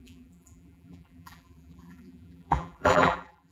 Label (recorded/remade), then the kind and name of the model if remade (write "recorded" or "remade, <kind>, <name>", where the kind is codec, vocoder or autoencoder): remade, vocoder, BigVGAN v2